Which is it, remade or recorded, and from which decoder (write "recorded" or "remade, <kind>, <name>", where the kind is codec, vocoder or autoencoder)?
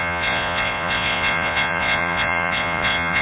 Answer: remade, vocoder, Vocos